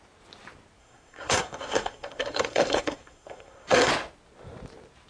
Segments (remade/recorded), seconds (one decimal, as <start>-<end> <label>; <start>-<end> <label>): 0.0-0.8 recorded; 0.8-3.9 remade; 3.9-5.1 recorded